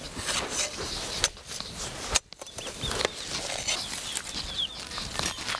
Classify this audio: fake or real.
real